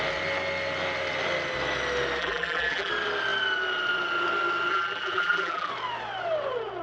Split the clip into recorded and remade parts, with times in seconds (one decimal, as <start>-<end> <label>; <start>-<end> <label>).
0.0-2.2 recorded; 2.2-2.9 remade; 2.9-4.7 recorded; 4.7-5.7 remade; 5.7-6.8 recorded